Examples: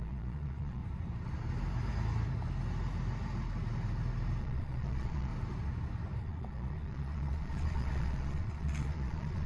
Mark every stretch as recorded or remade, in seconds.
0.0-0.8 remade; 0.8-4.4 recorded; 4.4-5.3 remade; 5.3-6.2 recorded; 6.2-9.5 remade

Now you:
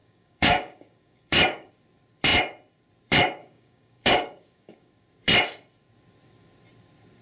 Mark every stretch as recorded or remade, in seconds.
0.0-1.7 remade; 1.7-3.4 recorded; 3.4-4.9 remade; 4.9-7.2 recorded

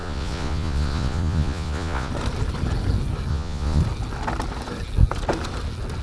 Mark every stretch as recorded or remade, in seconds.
0.0-2.1 remade; 2.1-3.3 recorded; 3.3-3.8 remade; 3.8-6.0 recorded

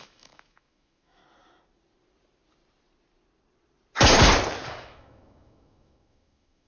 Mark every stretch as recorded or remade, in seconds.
0.0-1.2 remade; 1.2-4.8 recorded; 4.8-6.7 remade

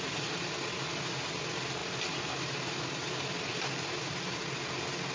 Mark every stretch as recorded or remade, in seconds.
0.0-5.1 recorded

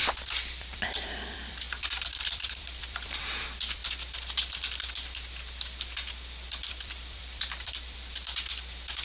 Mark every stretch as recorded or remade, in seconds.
0.0-3.8 remade; 3.8-6.7 recorded; 6.7-9.0 remade

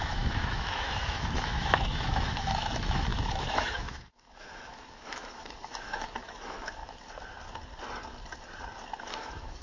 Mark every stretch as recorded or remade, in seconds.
0.0-6.8 remade; 6.8-9.0 recorded; 9.0-9.6 remade

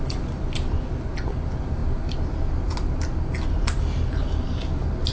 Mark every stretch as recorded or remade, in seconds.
0.0-5.1 recorded